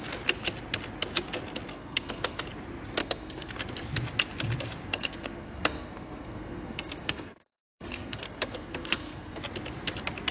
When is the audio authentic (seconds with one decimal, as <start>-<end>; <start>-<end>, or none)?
0.0-1.7; 2.4-3.0; 3.5-4.9; 9.4-10.3